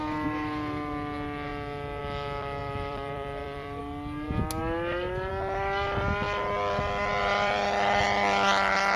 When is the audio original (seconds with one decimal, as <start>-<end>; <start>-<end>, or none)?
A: 0.0-2.6; 3.8-7.2; 8.0-9.0